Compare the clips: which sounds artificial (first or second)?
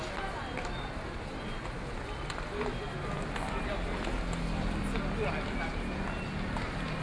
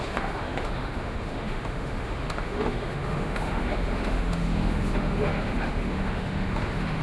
second